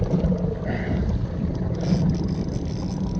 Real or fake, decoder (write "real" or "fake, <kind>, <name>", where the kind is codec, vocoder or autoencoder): real